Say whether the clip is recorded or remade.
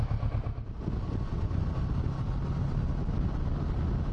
recorded